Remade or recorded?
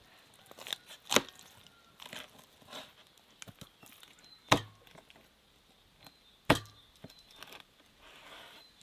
recorded